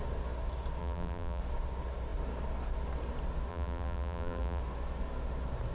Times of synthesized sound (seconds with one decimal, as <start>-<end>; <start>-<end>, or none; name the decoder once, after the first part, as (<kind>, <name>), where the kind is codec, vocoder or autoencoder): 0.8-1.4 (vocoder, BigVGAN v2); 3.5-4.6